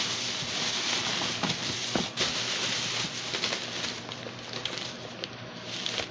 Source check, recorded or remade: recorded